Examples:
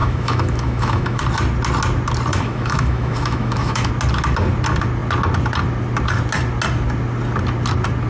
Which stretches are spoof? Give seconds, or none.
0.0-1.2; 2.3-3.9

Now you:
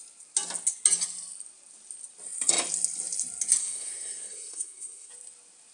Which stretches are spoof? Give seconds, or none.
3.6-5.1

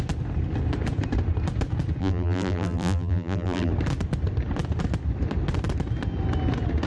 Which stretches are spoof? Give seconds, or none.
2.0-3.7

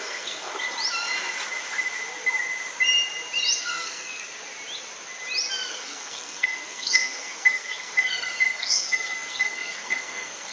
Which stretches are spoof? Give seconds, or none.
0.0-0.5; 3.6-4.2; 5.7-10.5

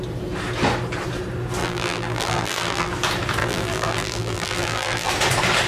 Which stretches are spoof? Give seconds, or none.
1.6-2.9; 3.4-5.1